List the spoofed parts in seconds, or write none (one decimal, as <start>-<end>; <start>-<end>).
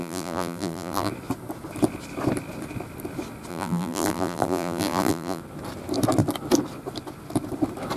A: 0.0-1.1; 3.5-5.4